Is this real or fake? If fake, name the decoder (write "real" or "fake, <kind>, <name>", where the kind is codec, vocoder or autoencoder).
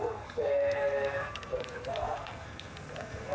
fake, codec, SNAC